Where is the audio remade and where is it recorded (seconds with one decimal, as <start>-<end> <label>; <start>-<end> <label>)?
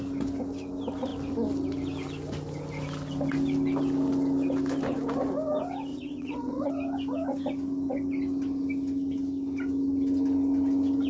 0.0-5.9 recorded; 5.9-6.7 remade; 6.7-11.1 recorded